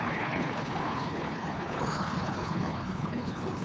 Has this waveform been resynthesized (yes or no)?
yes